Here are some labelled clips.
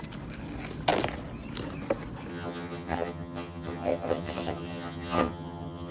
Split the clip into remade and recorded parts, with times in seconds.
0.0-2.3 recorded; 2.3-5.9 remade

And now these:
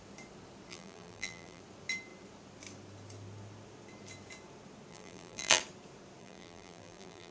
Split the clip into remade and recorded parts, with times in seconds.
0.0-0.7 recorded; 0.7-1.6 remade; 1.6-4.9 recorded; 4.9-5.6 remade; 5.6-6.2 recorded; 6.2-7.3 remade

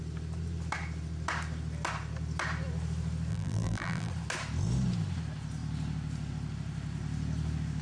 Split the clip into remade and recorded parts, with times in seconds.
0.0-3.3 recorded; 3.3-4.1 remade; 4.1-7.8 recorded

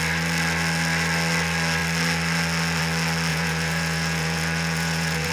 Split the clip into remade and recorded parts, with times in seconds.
0.0-3.3 recorded; 3.3-5.3 remade

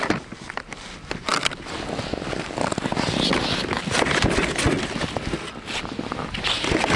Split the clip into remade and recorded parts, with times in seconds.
0.0-7.0 recorded